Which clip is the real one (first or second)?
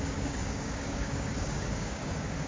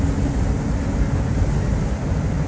second